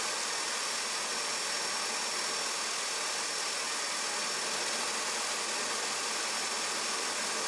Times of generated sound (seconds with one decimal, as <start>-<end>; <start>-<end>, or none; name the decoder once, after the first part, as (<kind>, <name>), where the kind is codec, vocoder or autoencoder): none